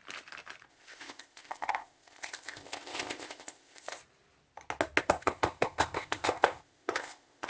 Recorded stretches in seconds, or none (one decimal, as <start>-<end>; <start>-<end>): 0.0-0.7; 4.0-5.0